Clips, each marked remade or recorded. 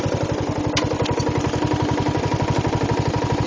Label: recorded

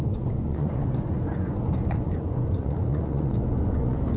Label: remade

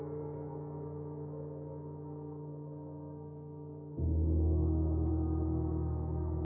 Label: remade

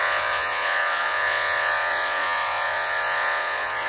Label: remade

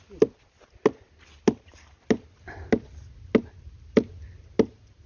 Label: recorded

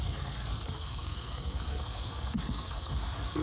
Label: remade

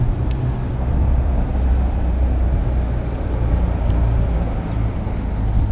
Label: recorded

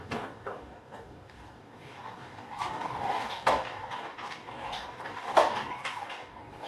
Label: remade